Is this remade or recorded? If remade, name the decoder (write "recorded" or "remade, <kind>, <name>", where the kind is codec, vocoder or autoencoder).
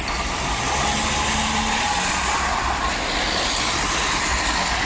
recorded